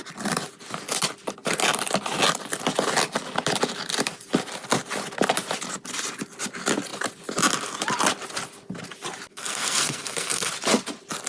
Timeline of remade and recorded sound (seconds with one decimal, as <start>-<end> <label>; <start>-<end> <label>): 0.0-9.3 recorded; 9.3-10.5 remade; 10.5-11.3 recorded